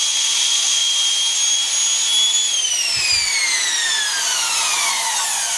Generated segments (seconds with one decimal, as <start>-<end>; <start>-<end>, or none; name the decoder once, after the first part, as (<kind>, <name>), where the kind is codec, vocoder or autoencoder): 0.0-0.8 (vocoder, Vocos); 4.2-5.6